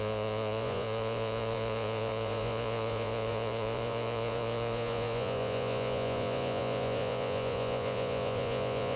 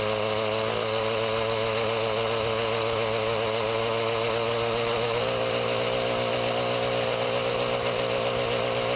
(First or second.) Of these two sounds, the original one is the second